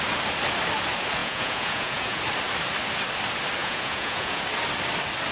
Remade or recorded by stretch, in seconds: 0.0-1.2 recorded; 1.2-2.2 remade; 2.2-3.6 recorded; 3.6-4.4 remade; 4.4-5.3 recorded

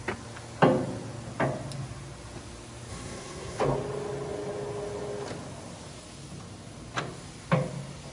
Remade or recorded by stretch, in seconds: 0.0-2.9 recorded; 2.9-3.6 remade; 3.6-8.1 recorded